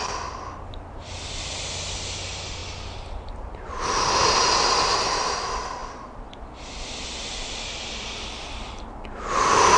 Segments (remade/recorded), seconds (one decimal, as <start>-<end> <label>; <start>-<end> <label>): 0.0-9.8 recorded

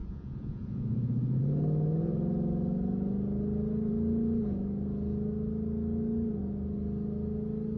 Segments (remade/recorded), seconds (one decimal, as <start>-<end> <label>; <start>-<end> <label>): 0.0-1.4 remade; 1.4-7.8 recorded